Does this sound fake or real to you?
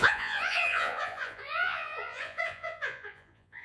fake